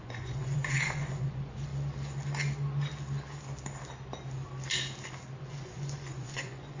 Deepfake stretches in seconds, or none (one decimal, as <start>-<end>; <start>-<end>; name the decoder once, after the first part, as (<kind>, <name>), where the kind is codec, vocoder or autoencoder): 0.0-1.7 (vocoder, Vocos); 5.4-6.8